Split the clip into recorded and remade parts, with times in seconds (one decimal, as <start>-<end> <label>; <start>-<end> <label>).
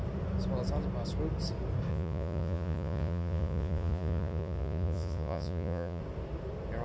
0.0-1.9 recorded; 1.9-6.0 remade; 6.0-6.8 recorded